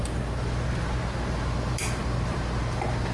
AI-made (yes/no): no